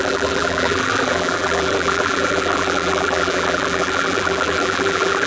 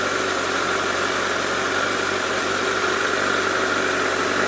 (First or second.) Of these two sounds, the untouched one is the second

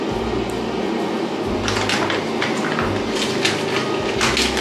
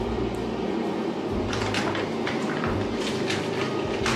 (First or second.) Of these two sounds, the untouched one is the first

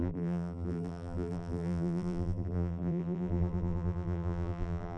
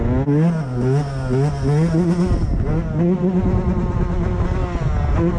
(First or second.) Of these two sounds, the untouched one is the second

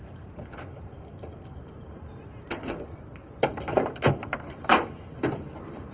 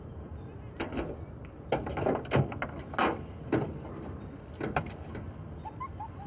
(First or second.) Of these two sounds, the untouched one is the second